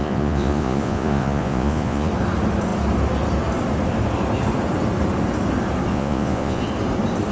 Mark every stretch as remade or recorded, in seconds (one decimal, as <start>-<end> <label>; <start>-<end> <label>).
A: 0.0-2.1 remade; 2.1-5.9 recorded; 5.9-6.6 remade; 6.6-7.3 recorded